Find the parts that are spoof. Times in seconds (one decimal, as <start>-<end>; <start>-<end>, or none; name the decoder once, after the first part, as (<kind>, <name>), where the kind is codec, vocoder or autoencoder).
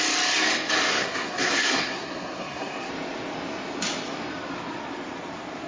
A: 0.9-2.9 (codec, SNAC)